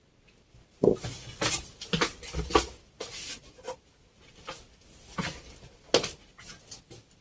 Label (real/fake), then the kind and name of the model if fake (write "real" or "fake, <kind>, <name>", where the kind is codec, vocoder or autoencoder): real